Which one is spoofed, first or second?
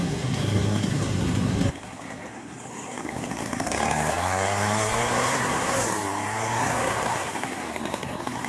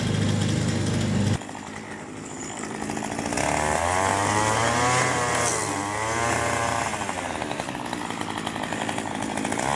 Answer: first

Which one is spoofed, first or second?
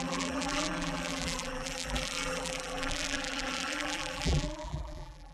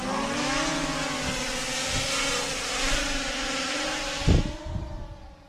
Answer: first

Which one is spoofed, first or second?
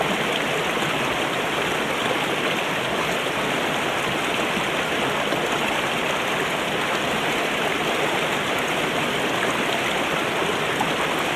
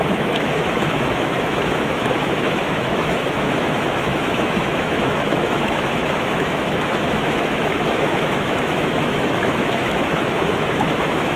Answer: second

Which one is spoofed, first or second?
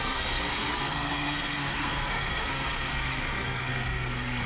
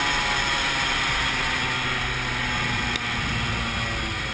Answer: first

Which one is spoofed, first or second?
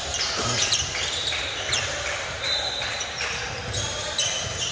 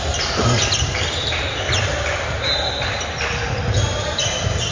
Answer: first